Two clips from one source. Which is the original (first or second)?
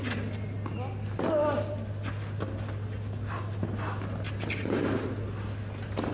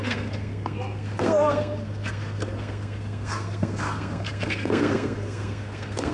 first